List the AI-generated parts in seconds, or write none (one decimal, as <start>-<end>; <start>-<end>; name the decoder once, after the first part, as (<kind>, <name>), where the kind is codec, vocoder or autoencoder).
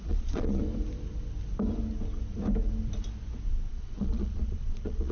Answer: 0.0-0.6 (vocoder, Vocos); 3.7-5.1